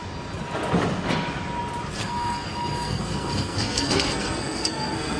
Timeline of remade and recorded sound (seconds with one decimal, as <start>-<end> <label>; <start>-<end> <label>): 0.0-2.0 recorded; 2.0-5.2 remade